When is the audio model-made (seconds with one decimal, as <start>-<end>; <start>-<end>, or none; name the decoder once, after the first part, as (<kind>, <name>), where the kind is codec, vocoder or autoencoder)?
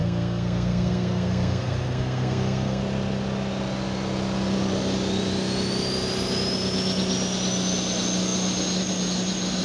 0.0-2.8 (codec, SNAC)